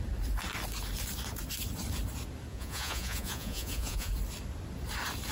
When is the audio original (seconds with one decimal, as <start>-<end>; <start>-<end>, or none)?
0.0-2.5; 4.1-5.3